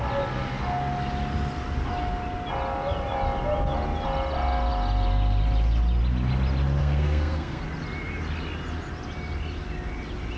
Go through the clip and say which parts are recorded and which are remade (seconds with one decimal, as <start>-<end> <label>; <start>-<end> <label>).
0.0-6.8 recorded; 6.8-7.6 remade; 7.6-10.4 recorded